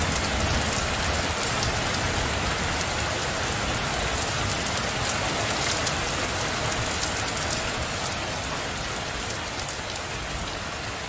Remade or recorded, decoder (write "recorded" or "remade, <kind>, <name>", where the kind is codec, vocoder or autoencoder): recorded